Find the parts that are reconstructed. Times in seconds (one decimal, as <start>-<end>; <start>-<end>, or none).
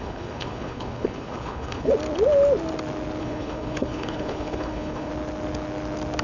0.0-1.9; 3.2-5.1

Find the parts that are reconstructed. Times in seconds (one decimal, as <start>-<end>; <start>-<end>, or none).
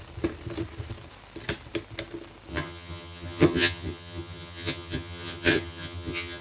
2.5-6.4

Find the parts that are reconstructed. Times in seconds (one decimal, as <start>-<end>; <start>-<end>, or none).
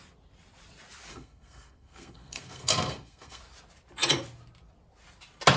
1.1-3.4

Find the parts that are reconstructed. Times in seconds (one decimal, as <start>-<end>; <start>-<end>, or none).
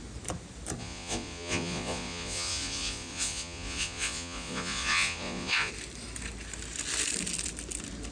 0.8-5.7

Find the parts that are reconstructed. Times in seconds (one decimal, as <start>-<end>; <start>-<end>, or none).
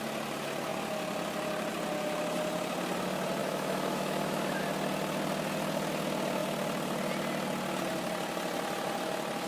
3.4-4.6